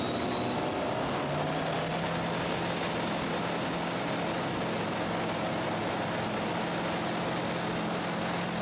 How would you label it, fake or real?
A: real